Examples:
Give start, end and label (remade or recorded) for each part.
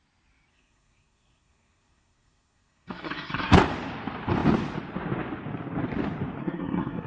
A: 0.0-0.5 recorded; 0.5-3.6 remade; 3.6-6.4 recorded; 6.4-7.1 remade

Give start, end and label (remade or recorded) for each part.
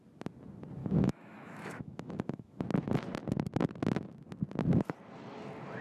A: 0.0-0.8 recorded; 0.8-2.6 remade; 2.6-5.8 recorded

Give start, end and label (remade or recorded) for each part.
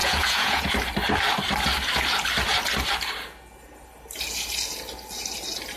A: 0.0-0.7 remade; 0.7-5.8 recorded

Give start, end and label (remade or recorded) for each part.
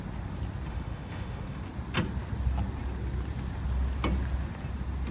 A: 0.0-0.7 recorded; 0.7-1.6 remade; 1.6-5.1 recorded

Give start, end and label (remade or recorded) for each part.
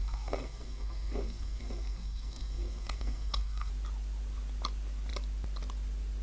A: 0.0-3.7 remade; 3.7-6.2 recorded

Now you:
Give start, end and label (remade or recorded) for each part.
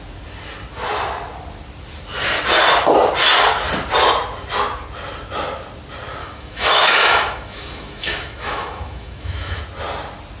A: 0.0-6.2 recorded; 6.2-9.6 remade; 9.6-10.4 recorded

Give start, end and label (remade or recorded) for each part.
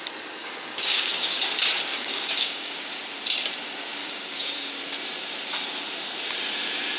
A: 0.0-0.4 recorded; 0.4-1.4 remade; 1.4-1.9 recorded; 1.9-3.0 remade; 3.0-4.0 recorded; 4.0-4.8 remade; 4.8-7.0 recorded